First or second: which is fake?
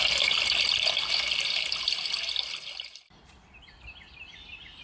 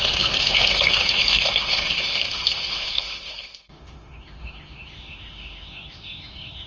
second